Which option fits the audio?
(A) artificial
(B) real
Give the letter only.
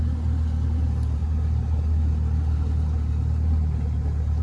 B